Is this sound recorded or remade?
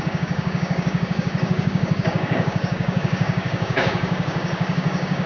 remade